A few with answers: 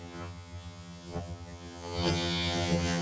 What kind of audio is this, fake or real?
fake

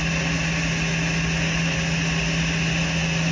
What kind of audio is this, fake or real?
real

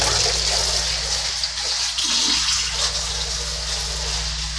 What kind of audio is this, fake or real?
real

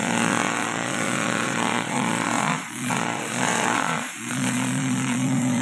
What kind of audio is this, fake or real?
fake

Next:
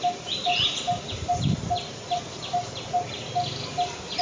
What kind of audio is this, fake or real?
real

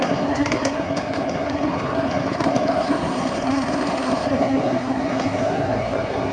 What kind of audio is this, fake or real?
fake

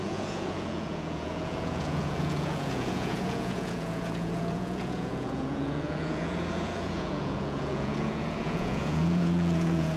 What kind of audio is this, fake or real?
fake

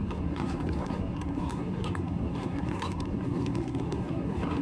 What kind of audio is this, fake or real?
fake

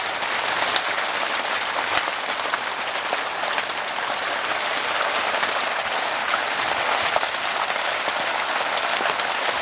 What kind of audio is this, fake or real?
real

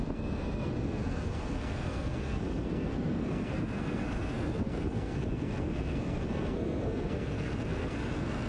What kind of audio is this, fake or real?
fake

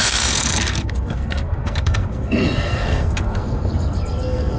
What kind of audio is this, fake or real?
fake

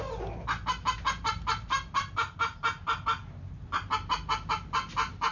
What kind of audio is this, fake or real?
real